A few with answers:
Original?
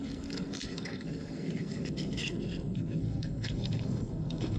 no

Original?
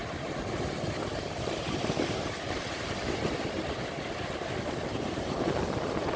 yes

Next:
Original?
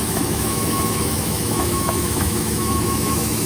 no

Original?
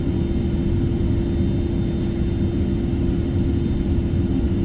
yes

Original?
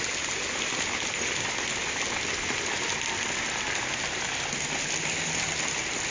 yes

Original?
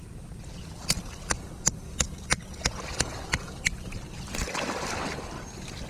yes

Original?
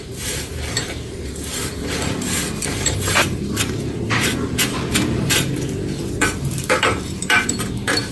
no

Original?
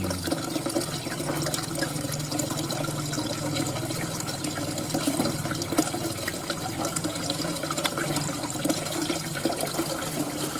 yes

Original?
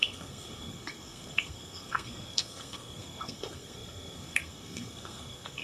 no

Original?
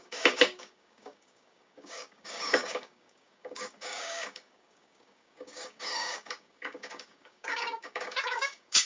no